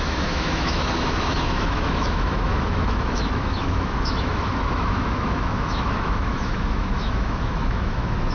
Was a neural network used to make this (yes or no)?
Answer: yes